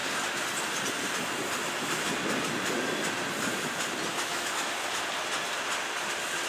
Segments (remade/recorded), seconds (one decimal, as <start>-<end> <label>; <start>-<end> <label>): 0.0-4.1 recorded; 4.1-4.7 remade; 4.7-6.5 recorded